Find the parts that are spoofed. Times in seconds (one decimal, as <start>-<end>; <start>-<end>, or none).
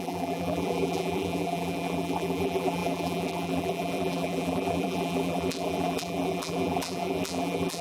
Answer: 0.0-7.8